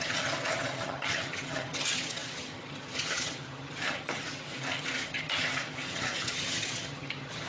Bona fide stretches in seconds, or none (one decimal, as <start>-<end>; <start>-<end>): none